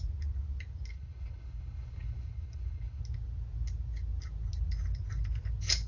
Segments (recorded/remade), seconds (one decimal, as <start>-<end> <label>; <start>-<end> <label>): 0.0-0.9 recorded; 0.9-3.0 remade; 3.0-5.9 recorded